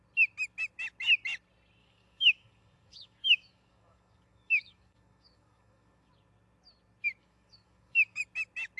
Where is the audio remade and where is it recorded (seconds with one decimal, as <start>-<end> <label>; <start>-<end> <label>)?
0.0-1.8 recorded; 1.8-6.1 remade; 6.1-7.2 recorded; 7.2-8.2 remade; 8.2-8.8 recorded